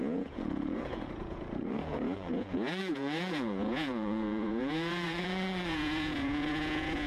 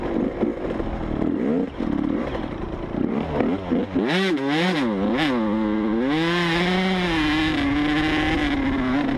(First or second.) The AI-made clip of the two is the first